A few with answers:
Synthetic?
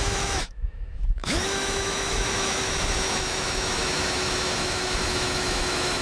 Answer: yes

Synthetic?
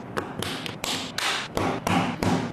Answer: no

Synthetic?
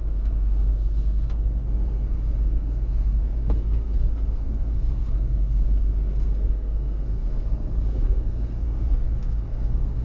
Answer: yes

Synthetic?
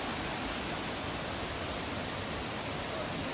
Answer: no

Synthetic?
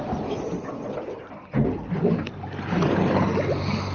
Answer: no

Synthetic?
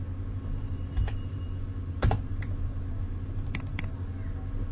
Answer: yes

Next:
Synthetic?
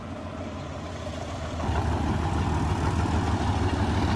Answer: no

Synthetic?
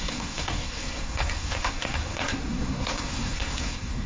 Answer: yes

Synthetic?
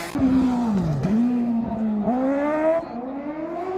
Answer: no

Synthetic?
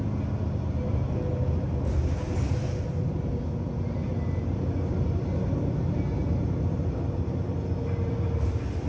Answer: no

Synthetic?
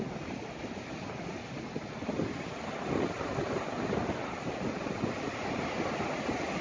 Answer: no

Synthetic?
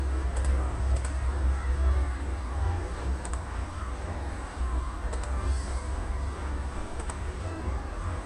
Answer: yes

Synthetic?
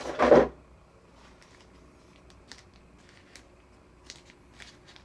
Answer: no